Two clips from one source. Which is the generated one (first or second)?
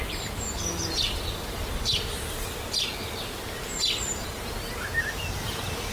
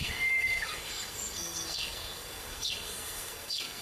second